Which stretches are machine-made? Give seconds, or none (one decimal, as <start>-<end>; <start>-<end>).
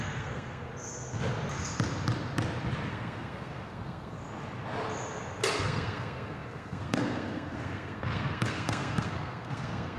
0.0-0.7; 2.9-4.2; 5.6-10.0